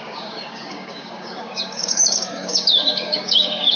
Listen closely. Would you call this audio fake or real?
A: fake